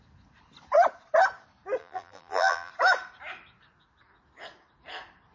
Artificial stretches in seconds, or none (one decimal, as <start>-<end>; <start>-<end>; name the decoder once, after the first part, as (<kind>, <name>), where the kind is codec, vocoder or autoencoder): 1.8-2.7 (vocoder, BigVGAN v2)